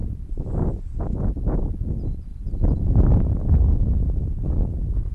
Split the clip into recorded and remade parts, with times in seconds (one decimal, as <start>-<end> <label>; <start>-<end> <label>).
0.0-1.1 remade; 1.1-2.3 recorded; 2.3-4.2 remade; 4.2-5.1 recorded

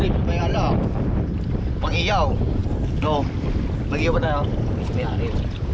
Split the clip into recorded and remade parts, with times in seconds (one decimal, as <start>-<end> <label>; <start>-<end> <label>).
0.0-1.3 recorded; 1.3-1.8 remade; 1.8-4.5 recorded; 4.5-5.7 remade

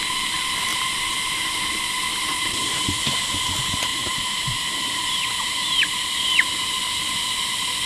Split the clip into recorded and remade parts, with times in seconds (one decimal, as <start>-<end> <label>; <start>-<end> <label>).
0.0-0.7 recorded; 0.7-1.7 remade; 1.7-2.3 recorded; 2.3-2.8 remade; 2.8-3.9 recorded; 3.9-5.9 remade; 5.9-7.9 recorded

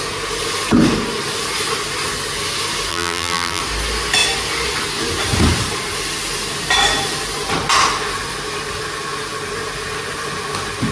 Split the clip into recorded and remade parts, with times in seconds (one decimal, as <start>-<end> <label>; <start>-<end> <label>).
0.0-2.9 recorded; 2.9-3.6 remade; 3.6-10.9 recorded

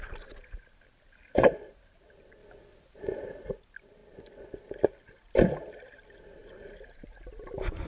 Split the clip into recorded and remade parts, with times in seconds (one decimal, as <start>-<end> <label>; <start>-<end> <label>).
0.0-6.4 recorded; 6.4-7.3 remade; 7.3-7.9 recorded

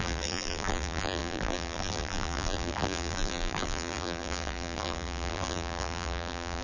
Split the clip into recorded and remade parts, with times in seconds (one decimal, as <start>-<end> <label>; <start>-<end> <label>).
0.0-6.6 remade